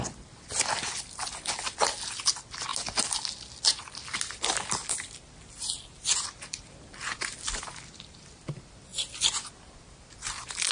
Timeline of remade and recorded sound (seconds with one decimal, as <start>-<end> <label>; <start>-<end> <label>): 0.0-10.7 recorded